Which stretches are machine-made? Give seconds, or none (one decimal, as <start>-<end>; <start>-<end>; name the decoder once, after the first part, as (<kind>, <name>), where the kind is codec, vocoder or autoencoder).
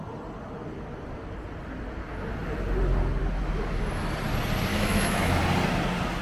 4.7-5.4 (autoencoder, DAC-VAE)